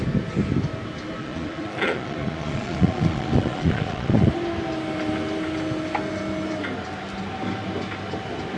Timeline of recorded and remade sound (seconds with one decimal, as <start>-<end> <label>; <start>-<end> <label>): 0.0-1.2 recorded; 1.2-4.3 remade; 4.3-8.6 recorded